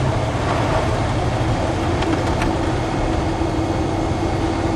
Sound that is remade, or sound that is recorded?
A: recorded